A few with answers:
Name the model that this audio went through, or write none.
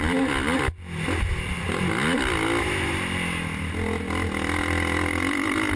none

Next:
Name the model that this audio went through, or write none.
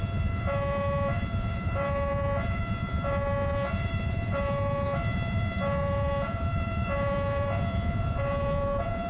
vocoder, Vocos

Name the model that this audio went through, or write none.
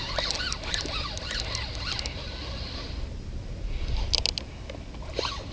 none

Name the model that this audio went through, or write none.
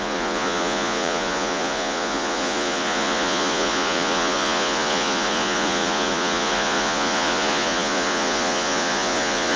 vocoder, Vocos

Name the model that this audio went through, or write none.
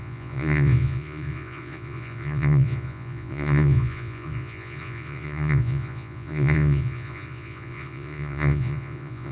vocoder, Vocos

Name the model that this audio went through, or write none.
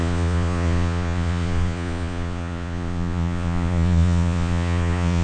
vocoder, Vocos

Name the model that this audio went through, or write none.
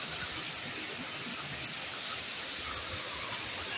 none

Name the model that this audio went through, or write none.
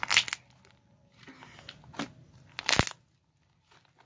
none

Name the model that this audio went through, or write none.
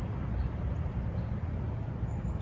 none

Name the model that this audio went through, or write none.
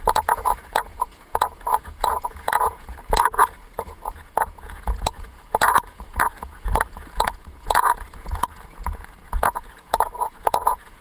vocoder, Vocos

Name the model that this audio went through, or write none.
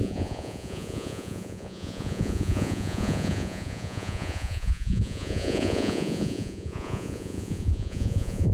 vocoder, Vocos